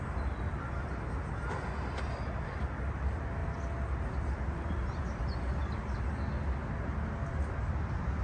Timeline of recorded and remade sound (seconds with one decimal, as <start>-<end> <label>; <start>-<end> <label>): 0.0-8.2 recorded